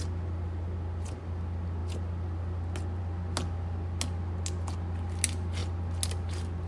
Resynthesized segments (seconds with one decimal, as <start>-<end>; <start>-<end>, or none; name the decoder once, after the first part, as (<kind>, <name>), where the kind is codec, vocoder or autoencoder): none